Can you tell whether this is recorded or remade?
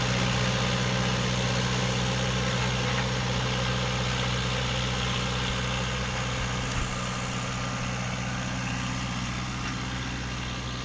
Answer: recorded